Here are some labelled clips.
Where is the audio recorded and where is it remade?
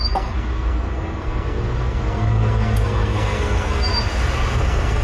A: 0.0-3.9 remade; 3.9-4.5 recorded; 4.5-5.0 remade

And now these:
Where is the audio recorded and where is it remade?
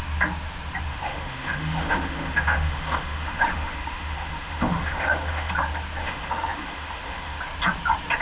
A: 0.0-0.9 recorded; 0.9-5.5 remade; 5.5-6.0 recorded; 6.0-7.4 remade; 7.4-8.2 recorded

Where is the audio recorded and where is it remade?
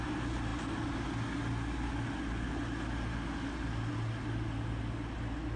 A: 0.0-5.6 recorded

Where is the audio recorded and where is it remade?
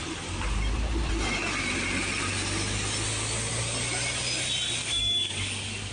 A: 0.0-4.8 recorded; 4.8-5.9 remade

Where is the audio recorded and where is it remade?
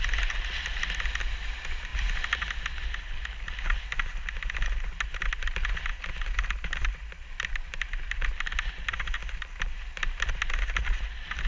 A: 0.0-11.5 recorded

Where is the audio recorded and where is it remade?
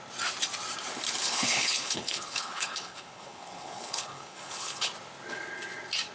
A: 0.0-1.2 recorded; 1.2-4.9 remade; 4.9-6.1 recorded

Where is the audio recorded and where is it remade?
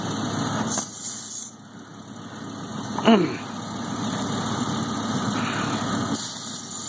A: 0.0-6.9 recorded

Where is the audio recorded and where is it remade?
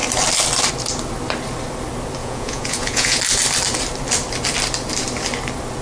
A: 0.0-2.2 recorded; 2.2-3.2 remade; 3.2-5.8 recorded